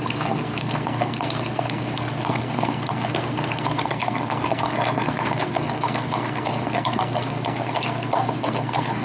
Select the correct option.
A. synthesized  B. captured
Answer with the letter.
A